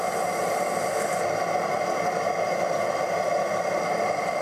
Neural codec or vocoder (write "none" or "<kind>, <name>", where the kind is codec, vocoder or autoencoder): none